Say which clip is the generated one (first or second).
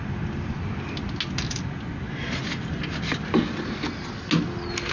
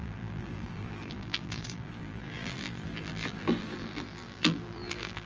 second